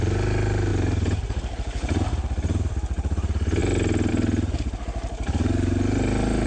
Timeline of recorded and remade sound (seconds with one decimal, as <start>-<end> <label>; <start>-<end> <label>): 0.0-6.5 recorded